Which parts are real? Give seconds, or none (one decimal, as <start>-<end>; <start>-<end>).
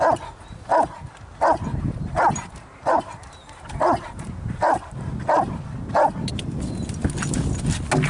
0.0-1.7; 5.6-8.1